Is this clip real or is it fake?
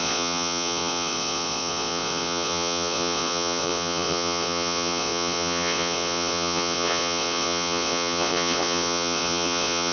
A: fake